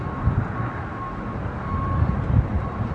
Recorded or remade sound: remade